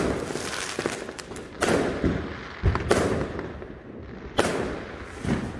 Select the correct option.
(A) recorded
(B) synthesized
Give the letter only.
A